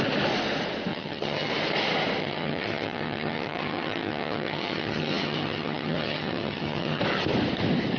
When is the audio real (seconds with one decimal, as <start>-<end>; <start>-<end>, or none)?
0.0-0.9; 1.5-2.2; 7.0-8.0